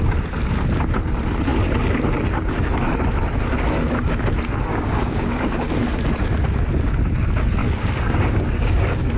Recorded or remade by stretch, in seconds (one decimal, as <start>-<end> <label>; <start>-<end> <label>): 0.0-4.7 recorded; 4.7-5.7 remade; 5.7-7.6 recorded; 7.6-9.2 remade